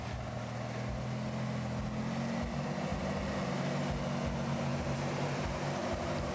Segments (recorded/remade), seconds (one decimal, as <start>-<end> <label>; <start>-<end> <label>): 0.0-2.9 recorded; 2.9-3.7 remade; 3.7-4.7 recorded; 4.7-6.3 remade